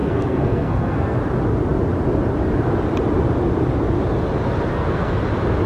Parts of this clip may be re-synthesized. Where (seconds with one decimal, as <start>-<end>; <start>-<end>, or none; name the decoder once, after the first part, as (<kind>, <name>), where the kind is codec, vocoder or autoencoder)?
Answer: 0.0-1.2 (codec, SNAC); 4.7-5.2